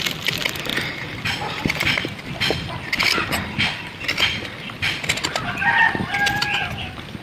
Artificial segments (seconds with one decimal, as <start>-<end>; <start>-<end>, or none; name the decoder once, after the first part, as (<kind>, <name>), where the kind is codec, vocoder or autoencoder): none